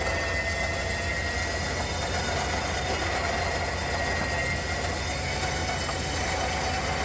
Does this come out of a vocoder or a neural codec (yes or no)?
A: no